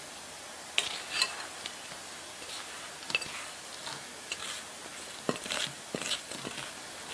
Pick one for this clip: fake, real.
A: real